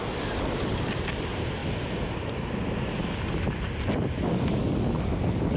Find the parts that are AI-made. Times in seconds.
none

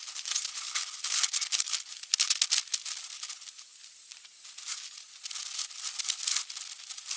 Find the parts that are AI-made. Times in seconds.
none